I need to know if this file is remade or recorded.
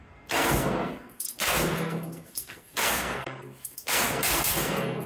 remade